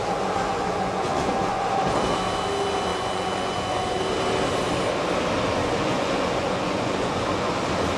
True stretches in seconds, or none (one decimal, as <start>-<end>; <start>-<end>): 1.8-2.9; 4.0-5.6; 7.5-8.0